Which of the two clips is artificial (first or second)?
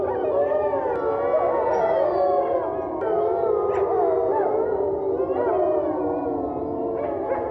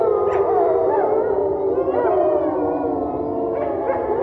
second